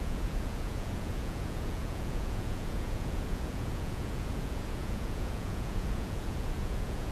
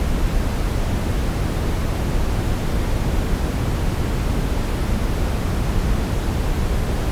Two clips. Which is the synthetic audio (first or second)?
first